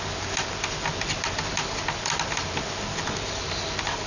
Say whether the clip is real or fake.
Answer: real